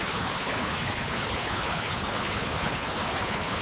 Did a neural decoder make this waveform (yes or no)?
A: yes